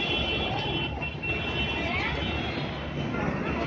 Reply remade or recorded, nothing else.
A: recorded